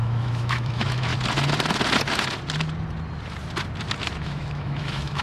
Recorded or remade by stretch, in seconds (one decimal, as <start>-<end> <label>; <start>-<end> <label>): 0.0-1.1 remade; 1.1-4.2 recorded; 4.2-5.2 remade